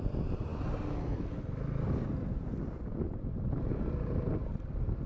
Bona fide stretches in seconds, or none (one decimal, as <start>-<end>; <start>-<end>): 0.0-5.1